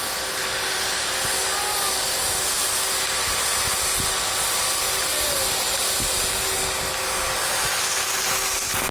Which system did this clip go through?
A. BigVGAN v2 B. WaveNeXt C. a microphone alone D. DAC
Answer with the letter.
C